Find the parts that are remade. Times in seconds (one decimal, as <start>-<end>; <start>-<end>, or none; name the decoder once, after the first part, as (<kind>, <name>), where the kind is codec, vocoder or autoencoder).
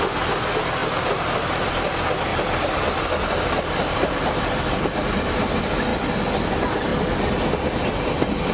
0.0-2.3 (vocoder, BigVGAN v2); 3.2-5.9; 6.5-6.9